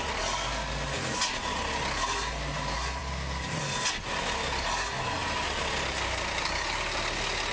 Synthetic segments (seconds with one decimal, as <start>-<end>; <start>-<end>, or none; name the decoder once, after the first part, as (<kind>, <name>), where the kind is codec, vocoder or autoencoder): none

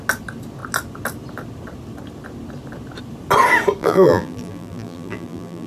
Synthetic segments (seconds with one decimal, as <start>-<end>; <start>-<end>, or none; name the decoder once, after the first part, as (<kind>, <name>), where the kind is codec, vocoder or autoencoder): 3.8-5.7 (vocoder, BigVGAN v2)